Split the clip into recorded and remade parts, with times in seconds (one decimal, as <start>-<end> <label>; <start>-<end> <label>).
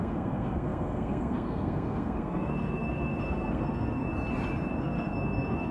0.0-4.0 remade; 4.0-4.8 recorded; 4.8-5.7 remade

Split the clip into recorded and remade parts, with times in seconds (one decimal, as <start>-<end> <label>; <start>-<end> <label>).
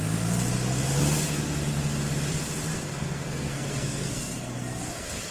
0.0-2.7 recorded; 2.7-5.3 remade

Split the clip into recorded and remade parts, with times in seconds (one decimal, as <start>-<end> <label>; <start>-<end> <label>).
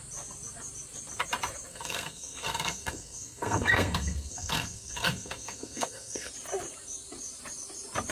0.0-1.7 recorded; 1.7-6.3 remade; 6.3-8.1 recorded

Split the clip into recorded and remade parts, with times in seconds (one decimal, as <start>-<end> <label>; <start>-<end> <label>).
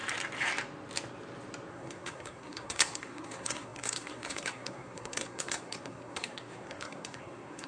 0.0-1.7 recorded; 1.7-7.7 remade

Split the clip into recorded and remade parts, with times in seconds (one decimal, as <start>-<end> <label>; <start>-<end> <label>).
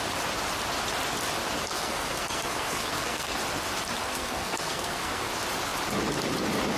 0.0-1.7 recorded; 1.7-3.4 remade; 3.4-4.0 recorded; 4.0-5.3 remade; 5.3-6.8 recorded